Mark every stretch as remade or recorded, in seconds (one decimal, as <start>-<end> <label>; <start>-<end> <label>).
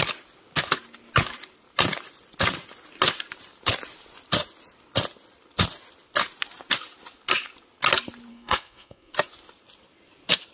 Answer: 0.0-8.3 recorded; 8.3-9.1 remade; 9.1-10.5 recorded